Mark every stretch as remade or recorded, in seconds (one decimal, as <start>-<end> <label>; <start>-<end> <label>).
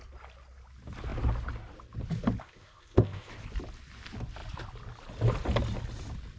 0.0-2.4 recorded; 2.4-3.3 remade; 3.3-6.4 recorded